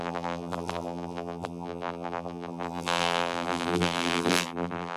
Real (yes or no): no